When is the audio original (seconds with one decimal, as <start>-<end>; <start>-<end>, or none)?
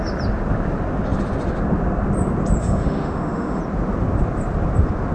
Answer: 0.0-2.6; 3.6-5.1